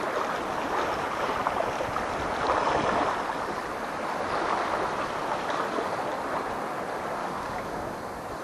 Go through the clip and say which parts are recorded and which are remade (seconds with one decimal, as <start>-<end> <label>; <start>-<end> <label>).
0.0-7.2 recorded; 7.2-7.9 remade; 7.9-8.4 recorded